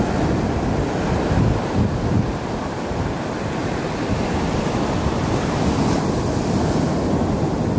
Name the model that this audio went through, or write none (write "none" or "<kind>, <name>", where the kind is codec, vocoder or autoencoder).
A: none